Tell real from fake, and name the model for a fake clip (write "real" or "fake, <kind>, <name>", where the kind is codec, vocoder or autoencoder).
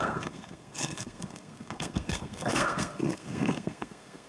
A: fake, codec, SNAC